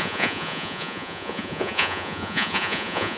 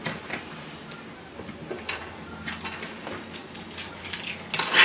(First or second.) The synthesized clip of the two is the first